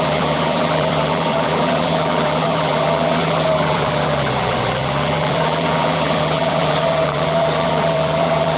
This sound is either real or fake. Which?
fake